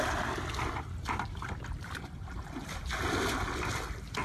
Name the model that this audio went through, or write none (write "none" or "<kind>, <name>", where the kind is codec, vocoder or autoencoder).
none